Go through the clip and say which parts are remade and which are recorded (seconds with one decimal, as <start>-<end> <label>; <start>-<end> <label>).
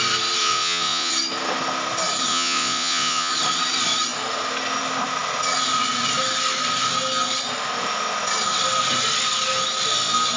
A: 0.0-0.4 recorded; 0.4-1.1 remade; 1.1-2.3 recorded; 2.3-3.3 remade; 3.3-10.4 recorded